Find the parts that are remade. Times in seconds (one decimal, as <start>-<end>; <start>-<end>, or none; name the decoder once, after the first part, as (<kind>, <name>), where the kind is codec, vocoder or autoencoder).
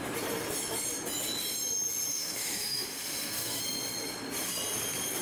2.1-3.6 (autoencoder, DAC-VAE)